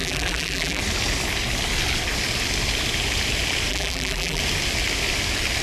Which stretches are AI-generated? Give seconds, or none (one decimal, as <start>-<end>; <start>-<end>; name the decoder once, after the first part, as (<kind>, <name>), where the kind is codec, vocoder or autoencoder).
0.0-0.8 (vocoder, BigVGAN v2); 3.7-4.4